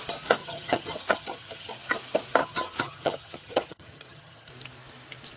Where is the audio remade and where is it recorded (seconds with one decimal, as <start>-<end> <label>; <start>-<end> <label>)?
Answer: 0.0-0.4 recorded; 0.4-1.7 remade; 1.7-2.4 recorded; 2.4-4.5 remade; 4.5-5.4 recorded